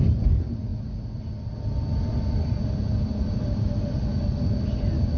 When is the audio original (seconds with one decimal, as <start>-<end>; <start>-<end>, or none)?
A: 0.0-5.2